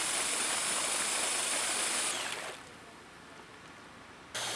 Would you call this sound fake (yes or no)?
no